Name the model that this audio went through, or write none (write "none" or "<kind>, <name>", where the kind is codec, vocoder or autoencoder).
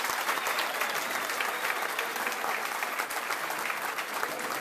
none